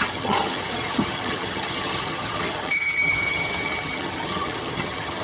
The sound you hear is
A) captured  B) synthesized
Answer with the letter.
B